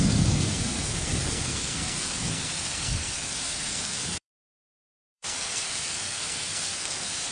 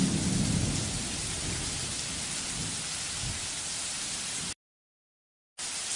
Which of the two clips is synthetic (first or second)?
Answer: first